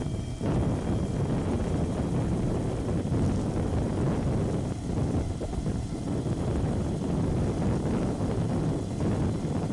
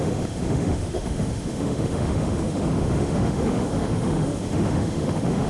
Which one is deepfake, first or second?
second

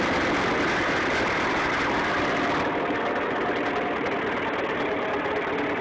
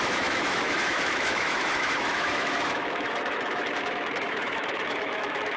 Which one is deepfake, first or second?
second